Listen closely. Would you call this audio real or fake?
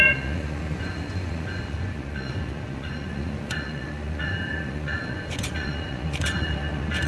fake